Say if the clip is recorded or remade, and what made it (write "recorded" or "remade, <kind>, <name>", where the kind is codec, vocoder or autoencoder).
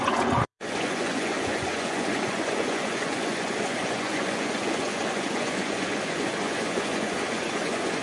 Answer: remade, vocoder, Vocos